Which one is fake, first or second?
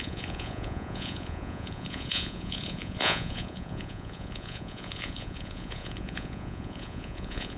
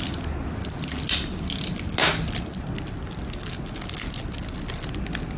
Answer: first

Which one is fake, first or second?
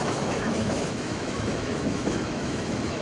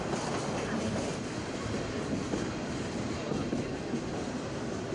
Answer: first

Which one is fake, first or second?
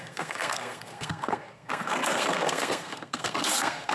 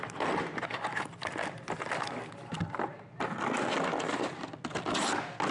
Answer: first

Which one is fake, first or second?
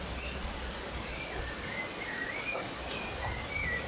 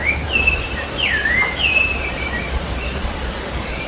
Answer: second